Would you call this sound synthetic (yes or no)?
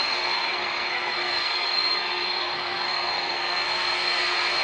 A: yes